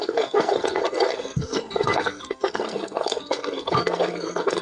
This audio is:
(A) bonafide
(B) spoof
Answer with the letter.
B